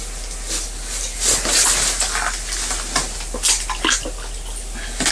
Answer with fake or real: real